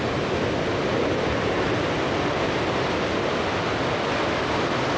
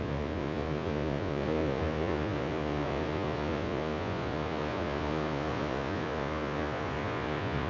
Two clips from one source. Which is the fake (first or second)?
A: second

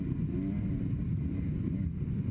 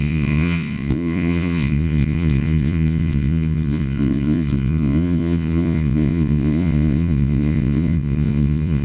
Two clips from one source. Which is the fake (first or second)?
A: second